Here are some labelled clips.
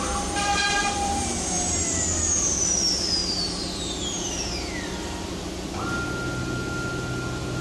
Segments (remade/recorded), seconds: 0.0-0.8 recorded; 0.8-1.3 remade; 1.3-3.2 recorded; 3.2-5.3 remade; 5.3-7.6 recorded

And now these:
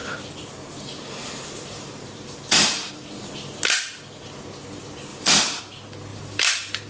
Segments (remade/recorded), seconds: 0.0-2.9 remade; 2.9-5.1 recorded; 5.1-5.6 remade; 5.6-6.1 recorded; 6.1-6.9 remade

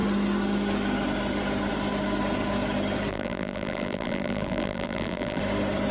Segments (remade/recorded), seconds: 0.0-3.1 recorded; 3.1-5.4 remade; 5.4-5.9 recorded

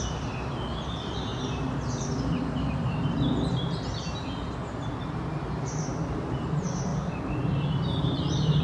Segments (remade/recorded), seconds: 0.0-1.3 remade; 1.3-5.6 recorded; 5.6-6.9 remade; 6.9-8.0 recorded; 8.0-8.6 remade

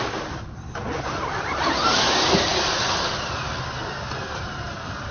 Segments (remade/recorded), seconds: 0.0-2.5 recorded; 2.5-3.5 remade; 3.5-5.1 recorded